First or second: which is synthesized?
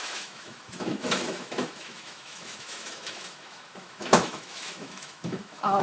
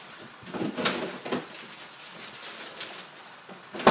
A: first